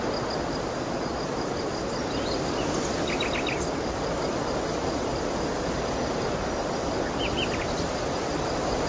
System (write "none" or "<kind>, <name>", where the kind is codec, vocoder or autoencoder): none